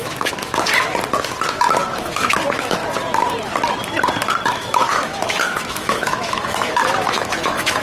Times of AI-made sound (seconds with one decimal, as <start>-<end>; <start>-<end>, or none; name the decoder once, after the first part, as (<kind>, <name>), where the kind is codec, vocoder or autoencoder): 0.0-0.7 (autoencoder, DAC-VAE); 2.0-2.8; 4.5-7.8